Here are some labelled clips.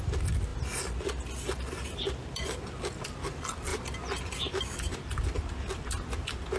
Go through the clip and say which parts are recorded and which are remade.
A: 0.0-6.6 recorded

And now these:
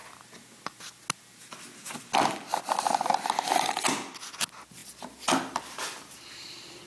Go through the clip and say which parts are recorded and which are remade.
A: 0.0-6.9 recorded

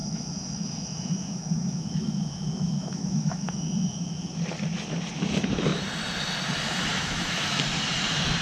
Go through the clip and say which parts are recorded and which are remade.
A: 0.0-4.4 remade; 4.4-6.9 recorded; 6.9-7.6 remade; 7.6-8.4 recorded

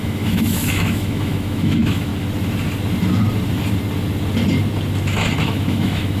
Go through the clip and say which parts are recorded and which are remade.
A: 0.0-2.1 remade; 2.1-5.4 recorded; 5.4-6.2 remade

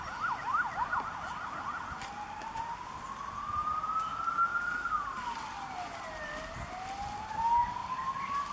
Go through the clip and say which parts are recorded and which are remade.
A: 0.0-8.5 recorded